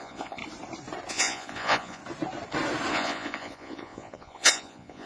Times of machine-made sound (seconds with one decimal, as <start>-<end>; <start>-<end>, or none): 0.0-0.4; 1.1-2.0; 2.9-5.1